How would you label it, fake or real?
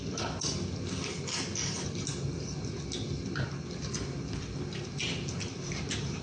real